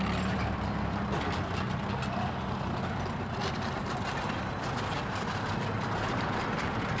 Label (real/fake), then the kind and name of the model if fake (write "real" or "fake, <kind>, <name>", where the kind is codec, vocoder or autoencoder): real